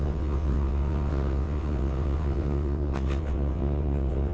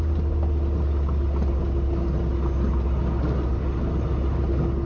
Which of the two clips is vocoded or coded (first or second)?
first